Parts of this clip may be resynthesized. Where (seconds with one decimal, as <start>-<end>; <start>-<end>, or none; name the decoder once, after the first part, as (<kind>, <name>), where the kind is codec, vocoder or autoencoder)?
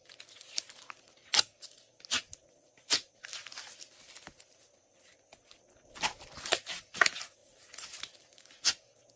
none